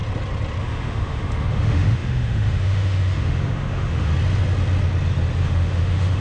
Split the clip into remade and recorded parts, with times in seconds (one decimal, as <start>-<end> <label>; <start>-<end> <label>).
0.0-0.6 recorded; 0.6-4.1 remade; 4.1-5.4 recorded; 5.4-6.2 remade